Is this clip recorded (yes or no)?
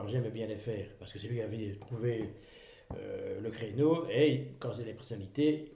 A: yes